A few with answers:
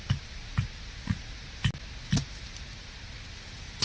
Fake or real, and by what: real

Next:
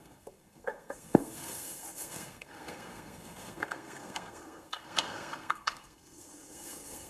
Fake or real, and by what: fake, codec, SNAC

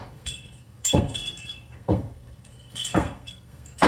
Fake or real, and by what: fake, codec, SNAC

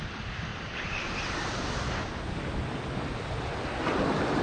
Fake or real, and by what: real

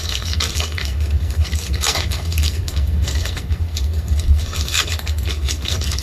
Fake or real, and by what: fake, codec, SNAC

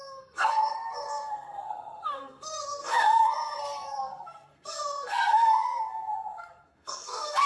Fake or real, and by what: fake, codec, SNAC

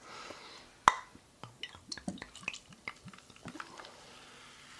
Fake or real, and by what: real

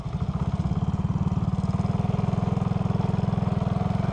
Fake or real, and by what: real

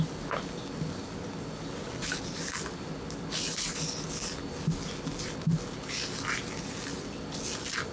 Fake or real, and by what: real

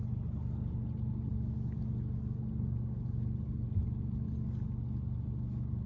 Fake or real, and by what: real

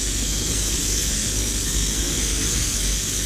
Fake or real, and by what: fake, codec, SNAC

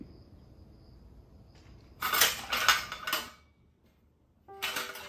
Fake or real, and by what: real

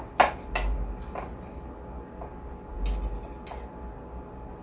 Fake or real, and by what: real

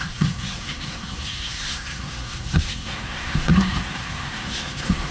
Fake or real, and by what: fake, codec, SNAC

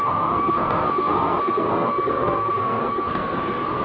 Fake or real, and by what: fake, codec, SNAC